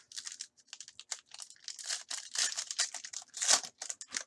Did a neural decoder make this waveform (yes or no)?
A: no